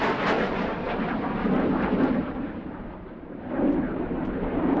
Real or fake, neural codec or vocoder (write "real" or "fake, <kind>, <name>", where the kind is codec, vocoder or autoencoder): fake, vocoder, BigVGAN v2